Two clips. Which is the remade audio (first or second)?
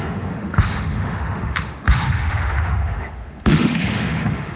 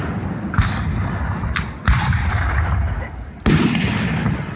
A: first